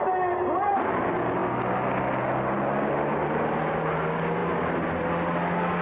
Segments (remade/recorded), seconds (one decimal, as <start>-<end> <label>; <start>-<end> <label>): 0.0-5.8 recorded

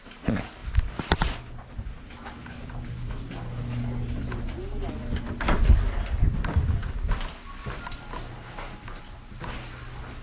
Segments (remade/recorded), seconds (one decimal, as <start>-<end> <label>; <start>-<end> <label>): 0.0-10.2 recorded

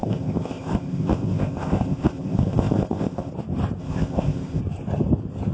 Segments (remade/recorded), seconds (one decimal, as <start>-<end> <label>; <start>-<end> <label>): 0.0-3.3 remade; 3.3-3.8 recorded; 3.8-4.6 remade; 4.6-5.5 recorded

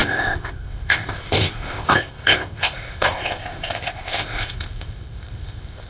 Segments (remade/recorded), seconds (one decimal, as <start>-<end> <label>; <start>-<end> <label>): 0.0-5.9 remade

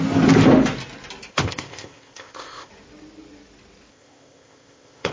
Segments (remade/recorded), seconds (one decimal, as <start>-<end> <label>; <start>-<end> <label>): 0.0-1.3 recorded; 1.3-2.7 remade; 2.7-3.9 recorded; 3.9-5.1 remade

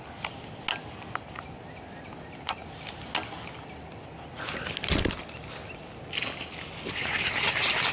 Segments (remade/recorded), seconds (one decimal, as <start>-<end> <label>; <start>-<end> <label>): 0.0-7.9 recorded